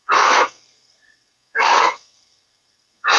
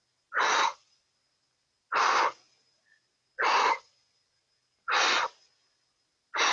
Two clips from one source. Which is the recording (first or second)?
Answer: second